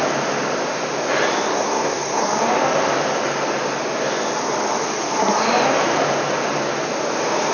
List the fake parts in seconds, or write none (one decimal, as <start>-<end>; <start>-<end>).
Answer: 1.5-2.2